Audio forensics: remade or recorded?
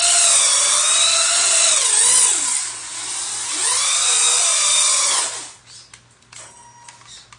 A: recorded